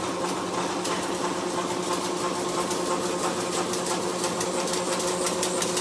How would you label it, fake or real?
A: real